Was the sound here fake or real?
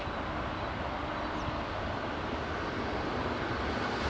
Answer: real